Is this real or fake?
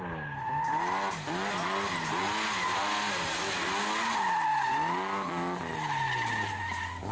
real